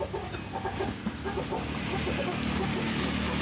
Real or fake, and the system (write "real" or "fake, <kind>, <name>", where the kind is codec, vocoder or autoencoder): real